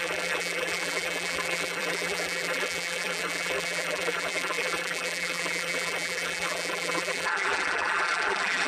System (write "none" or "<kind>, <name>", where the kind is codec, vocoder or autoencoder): vocoder, BigVGAN v2